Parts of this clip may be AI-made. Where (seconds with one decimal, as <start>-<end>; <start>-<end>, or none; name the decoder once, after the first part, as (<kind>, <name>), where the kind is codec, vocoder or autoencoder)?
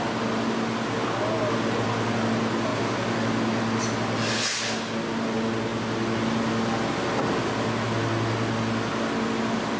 none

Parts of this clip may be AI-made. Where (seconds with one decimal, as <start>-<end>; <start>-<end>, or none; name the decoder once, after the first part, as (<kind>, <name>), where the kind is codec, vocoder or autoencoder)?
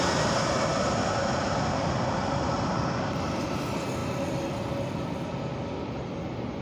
0.0-0.7 (vocoder, BigVGAN v2); 1.4-4.0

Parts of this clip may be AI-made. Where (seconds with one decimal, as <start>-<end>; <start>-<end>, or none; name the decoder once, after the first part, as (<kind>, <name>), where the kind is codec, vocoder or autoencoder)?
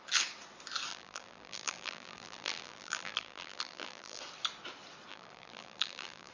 0.9-4.2 (vocoder, BigVGAN v2); 5.1-6.3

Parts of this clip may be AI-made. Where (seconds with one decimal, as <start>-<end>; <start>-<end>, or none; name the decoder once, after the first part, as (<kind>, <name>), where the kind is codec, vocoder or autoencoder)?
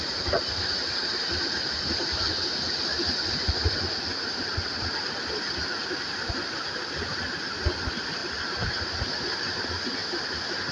8.2-9.6 (vocoder, BigVGAN v2); 10.0-10.7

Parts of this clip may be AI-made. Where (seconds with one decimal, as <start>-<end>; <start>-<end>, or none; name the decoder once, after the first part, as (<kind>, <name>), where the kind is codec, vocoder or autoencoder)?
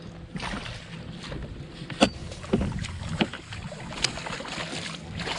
2.2-2.9 (vocoder, BigVGAN v2); 3.3-4.2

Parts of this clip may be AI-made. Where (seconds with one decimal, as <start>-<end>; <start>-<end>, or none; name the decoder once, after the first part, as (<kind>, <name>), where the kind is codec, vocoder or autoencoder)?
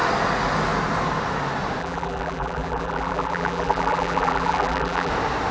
1.8-5.1 (vocoder, BigVGAN v2)